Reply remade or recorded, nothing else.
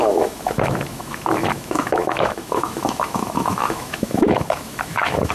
remade